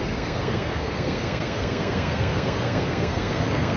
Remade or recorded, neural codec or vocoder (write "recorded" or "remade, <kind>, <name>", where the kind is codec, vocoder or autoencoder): remade, codec, SNAC